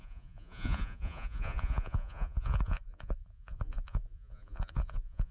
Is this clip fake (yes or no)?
yes